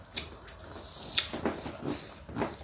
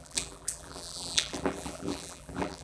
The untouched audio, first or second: first